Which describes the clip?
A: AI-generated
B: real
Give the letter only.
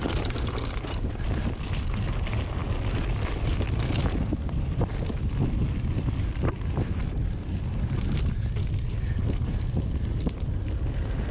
B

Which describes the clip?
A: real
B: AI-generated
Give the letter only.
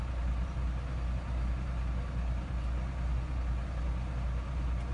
A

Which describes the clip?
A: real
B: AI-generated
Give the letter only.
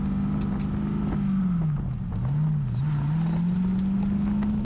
A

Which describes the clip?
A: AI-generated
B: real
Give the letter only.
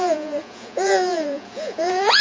A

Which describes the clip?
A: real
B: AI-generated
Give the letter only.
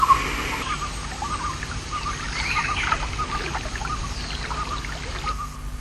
A